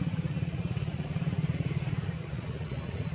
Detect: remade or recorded remade